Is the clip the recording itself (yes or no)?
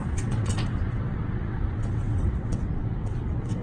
no